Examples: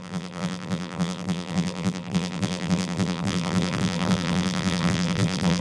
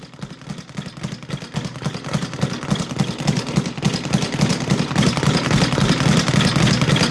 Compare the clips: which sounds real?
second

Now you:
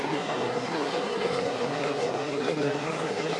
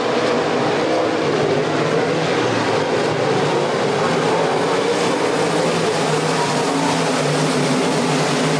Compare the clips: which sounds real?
second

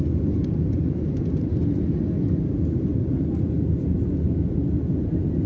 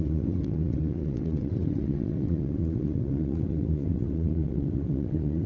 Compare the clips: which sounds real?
first